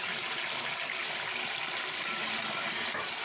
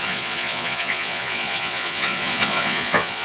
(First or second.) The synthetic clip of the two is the second